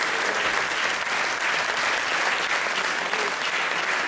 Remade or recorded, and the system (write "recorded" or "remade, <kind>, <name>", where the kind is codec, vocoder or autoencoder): recorded